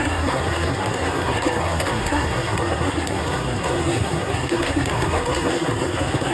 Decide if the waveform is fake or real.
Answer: fake